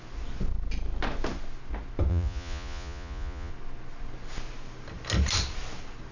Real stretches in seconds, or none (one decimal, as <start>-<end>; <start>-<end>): 0.0-2.1; 3.5-6.1